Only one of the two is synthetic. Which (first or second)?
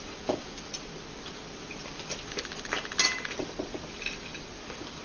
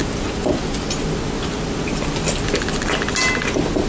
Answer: first